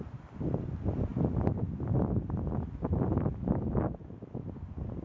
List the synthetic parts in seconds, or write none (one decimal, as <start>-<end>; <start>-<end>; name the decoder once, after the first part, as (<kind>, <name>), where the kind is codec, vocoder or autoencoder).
none